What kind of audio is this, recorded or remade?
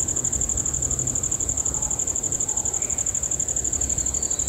remade